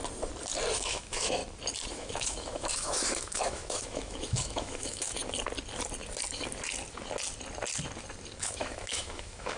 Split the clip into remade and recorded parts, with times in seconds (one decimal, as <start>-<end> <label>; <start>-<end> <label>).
0.0-0.8 recorded; 0.8-1.4 remade; 1.4-1.9 recorded; 1.9-5.2 remade; 5.2-8.4 recorded; 8.4-9.6 remade